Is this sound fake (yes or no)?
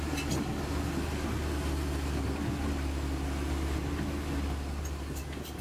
no